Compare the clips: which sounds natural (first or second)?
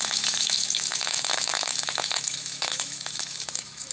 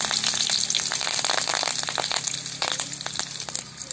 second